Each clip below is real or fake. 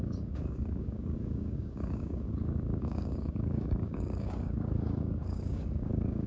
fake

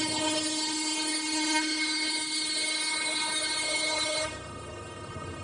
fake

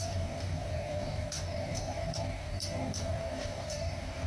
fake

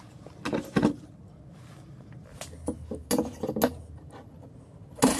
real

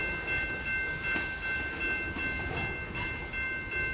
real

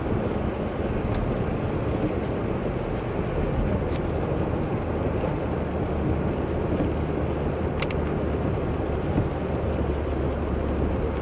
real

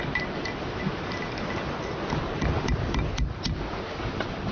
real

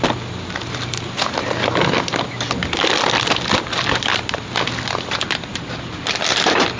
real